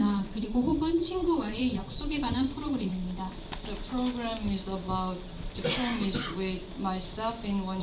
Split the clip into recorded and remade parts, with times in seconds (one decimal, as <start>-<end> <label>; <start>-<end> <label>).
0.0-2.9 remade; 2.9-7.8 recorded